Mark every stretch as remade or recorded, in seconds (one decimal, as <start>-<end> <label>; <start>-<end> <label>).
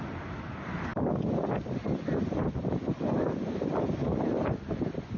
0.0-5.2 recorded